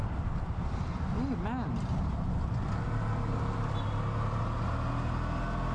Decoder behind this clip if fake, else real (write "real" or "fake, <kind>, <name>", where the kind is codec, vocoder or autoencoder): real